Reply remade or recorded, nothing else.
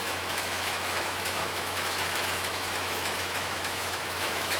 remade